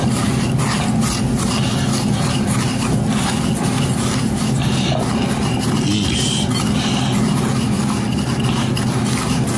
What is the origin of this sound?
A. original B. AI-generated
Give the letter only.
A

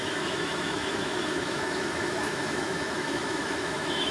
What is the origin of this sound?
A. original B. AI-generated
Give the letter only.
B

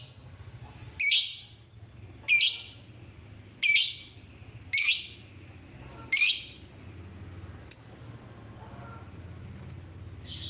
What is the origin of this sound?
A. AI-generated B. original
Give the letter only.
B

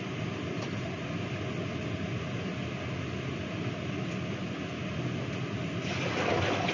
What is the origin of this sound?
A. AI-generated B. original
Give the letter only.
B